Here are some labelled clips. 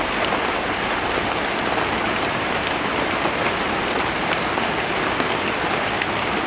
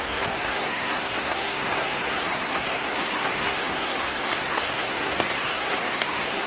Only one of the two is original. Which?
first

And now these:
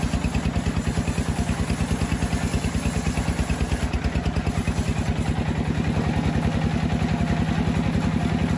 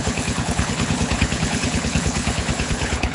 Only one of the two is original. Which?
first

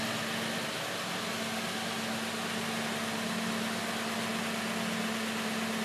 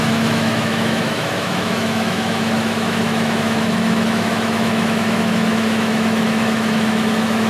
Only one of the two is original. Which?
first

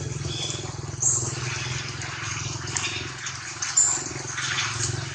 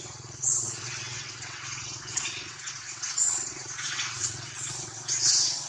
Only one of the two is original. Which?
first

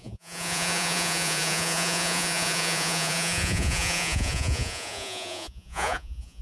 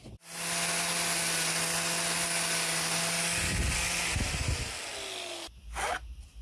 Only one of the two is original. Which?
second